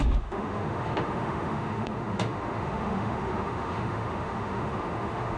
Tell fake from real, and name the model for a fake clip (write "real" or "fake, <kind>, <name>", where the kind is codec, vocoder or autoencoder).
fake, autoencoder, DAC-VAE